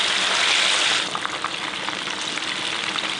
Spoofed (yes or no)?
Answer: no